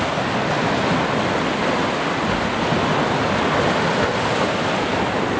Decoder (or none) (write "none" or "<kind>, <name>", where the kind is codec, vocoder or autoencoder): none